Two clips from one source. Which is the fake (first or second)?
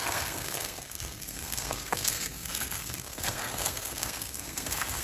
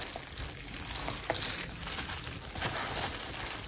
first